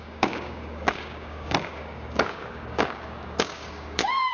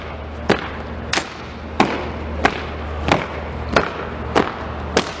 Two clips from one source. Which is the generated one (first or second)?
first